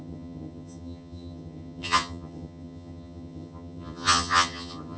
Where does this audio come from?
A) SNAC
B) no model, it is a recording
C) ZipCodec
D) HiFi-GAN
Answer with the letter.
D